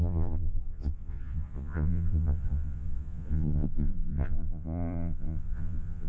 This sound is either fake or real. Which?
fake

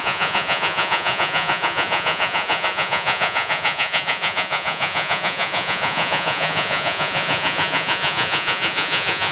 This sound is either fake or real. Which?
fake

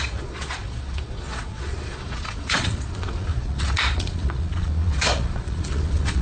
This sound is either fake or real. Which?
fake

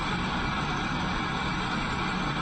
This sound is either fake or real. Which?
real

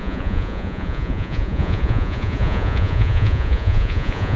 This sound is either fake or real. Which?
fake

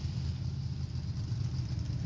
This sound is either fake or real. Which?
real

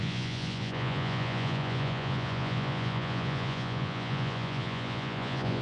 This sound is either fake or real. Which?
fake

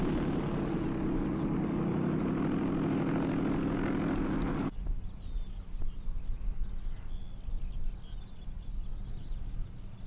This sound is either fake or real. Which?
real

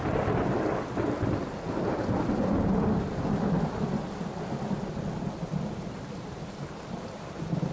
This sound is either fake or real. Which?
real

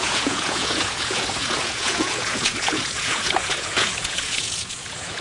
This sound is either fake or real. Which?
fake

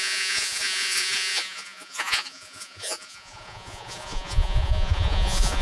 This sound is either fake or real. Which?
fake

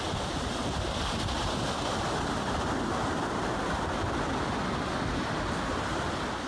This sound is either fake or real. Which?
real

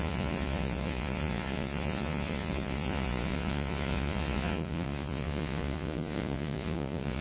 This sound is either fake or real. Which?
fake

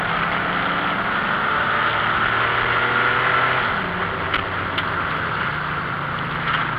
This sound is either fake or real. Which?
real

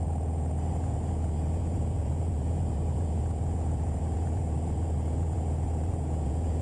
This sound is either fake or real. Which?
fake